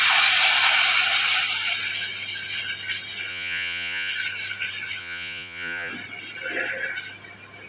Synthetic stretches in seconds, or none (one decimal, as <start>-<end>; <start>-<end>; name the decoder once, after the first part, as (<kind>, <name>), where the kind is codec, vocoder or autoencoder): 3.3-4.1 (vocoder, Vocos); 5.0-5.9